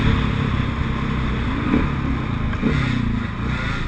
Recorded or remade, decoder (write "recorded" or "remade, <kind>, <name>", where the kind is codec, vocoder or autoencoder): recorded